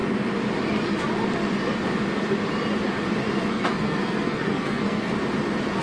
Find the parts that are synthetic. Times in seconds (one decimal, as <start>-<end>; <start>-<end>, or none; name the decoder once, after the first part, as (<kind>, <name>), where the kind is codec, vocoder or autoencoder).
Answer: 3.5-5.1 (codec, SNAC)